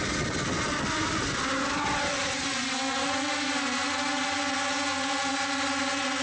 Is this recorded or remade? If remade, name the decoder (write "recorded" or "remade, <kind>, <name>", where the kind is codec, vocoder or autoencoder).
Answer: recorded